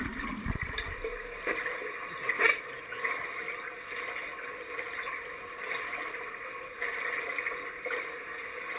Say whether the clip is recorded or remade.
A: recorded